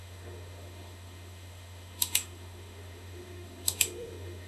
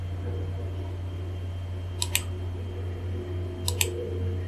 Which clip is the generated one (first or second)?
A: first